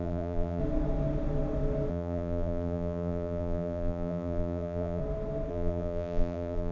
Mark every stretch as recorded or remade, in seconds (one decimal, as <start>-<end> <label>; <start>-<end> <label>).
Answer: 0.0-0.6 remade; 0.6-1.9 recorded; 1.9-5.0 remade; 5.0-5.5 recorded; 5.5-6.7 remade